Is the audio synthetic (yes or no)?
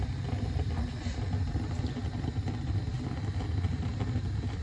no